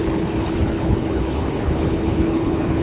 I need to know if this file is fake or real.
fake